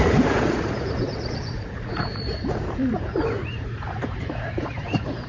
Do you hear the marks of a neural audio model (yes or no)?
yes